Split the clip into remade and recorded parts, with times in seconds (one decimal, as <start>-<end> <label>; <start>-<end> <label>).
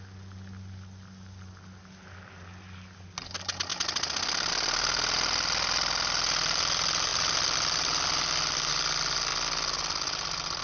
0.0-10.6 recorded